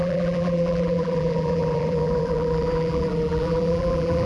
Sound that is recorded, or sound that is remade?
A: remade